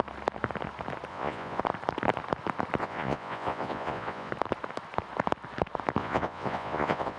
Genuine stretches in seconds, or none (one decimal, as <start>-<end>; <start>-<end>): 0.0-1.1; 1.6-2.8; 4.3-6.0